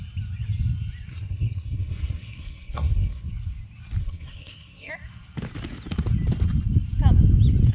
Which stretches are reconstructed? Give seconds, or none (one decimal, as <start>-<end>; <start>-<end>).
1.1-3.3; 4.0-4.9